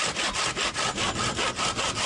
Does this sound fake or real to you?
real